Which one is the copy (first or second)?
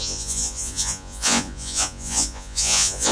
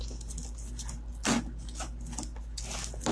first